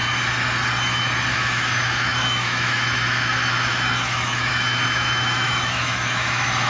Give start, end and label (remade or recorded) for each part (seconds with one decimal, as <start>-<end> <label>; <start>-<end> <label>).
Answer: 0.0-1.3 recorded; 1.3-6.7 remade